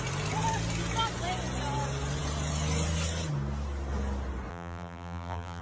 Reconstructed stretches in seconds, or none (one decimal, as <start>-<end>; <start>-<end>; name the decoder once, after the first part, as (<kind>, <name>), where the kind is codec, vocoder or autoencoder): 4.5-5.6 (vocoder, BigVGAN v2)